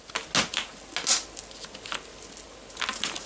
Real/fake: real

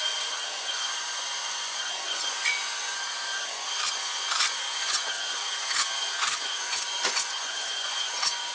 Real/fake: fake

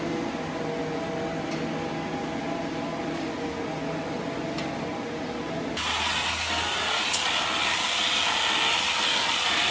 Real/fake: real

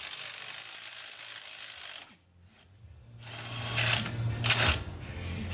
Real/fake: real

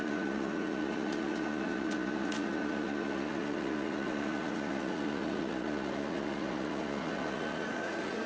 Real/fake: fake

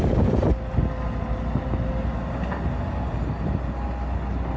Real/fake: real